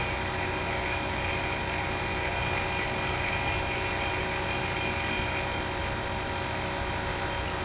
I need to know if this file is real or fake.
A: real